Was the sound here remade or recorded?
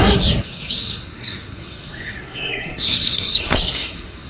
remade